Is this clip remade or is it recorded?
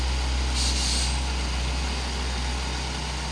recorded